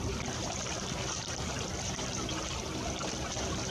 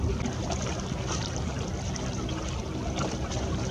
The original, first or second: second